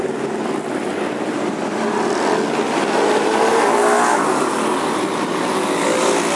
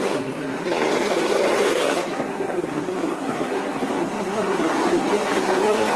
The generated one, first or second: second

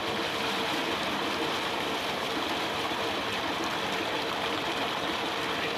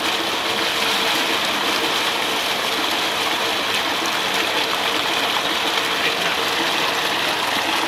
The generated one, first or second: first